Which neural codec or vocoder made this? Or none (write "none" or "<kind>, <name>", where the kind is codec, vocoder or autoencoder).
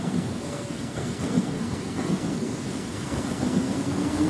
codec, SNAC